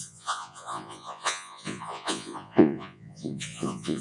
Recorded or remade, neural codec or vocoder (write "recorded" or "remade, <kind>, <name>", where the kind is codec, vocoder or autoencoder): remade, vocoder, Vocos